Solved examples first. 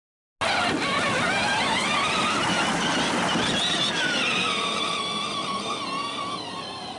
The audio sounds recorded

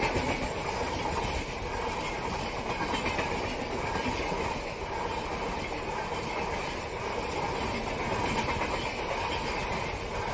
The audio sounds recorded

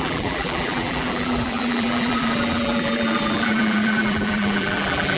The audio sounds remade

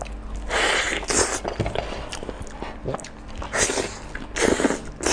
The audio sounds recorded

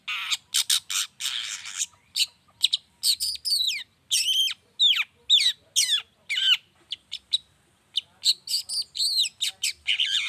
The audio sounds recorded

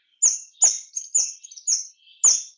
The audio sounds recorded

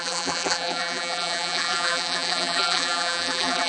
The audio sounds remade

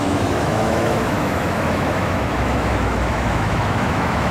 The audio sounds remade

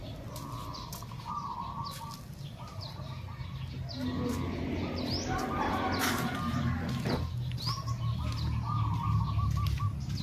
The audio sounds recorded